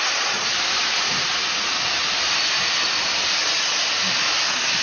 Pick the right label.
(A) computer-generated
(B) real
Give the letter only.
B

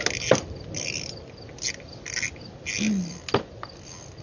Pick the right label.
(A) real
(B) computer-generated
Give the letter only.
A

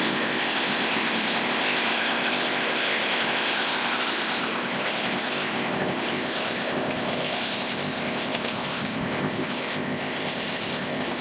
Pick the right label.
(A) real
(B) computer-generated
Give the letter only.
B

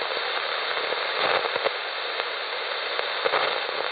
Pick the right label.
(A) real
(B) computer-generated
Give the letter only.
A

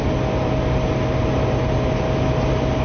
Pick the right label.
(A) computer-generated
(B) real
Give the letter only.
B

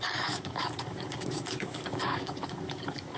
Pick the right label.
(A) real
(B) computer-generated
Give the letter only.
B